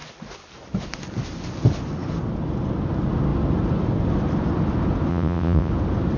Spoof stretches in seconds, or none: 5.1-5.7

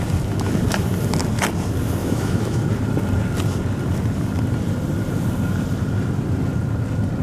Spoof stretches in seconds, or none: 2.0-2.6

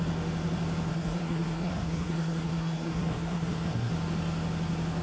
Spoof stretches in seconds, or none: 0.9-3.9

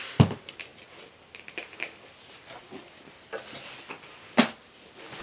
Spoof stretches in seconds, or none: none

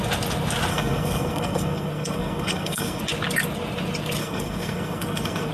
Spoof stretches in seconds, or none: 0.7-3.0; 4.2-5.5

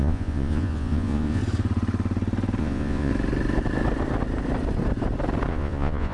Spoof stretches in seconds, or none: 0.0-1.4; 2.6-3.1; 5.5-6.1

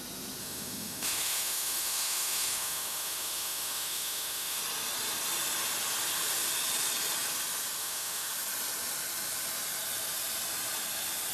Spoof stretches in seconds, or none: 0.4-4.6; 7.8-8.3

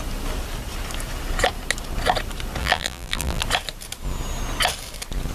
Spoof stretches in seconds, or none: 2.6-3.4